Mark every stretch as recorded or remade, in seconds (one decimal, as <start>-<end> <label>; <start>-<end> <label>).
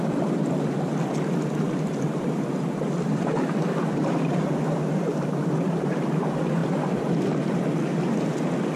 0.0-8.8 recorded